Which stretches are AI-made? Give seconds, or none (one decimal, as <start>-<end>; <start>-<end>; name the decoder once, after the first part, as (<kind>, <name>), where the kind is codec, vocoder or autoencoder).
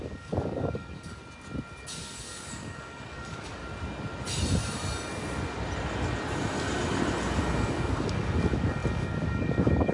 0.0-1.2 (codec, DAC); 1.8-3.6; 7.7-9.9